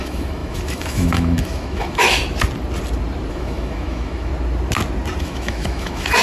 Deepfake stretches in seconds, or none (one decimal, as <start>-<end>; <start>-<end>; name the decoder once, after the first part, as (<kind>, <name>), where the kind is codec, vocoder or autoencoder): 0.0-2.2 (autoencoder, DAC-VAE); 3.3-4.3; 5.2-6.2